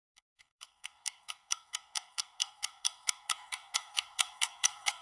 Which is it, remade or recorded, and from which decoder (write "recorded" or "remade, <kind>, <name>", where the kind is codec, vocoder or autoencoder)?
remade, codec, SNAC